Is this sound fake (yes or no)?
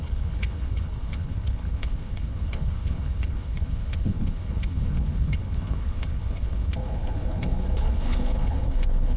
yes